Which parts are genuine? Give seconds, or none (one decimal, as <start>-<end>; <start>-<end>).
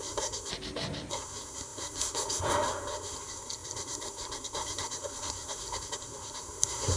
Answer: 0.5-1.1